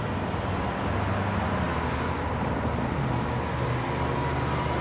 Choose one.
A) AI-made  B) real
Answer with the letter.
B